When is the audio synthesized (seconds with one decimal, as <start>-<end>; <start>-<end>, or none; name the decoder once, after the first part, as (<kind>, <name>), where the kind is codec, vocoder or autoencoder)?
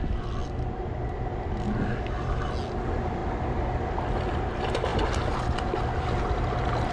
none